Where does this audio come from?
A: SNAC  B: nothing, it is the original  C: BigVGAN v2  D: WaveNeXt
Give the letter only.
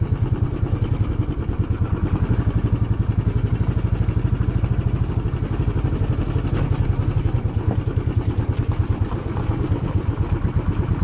B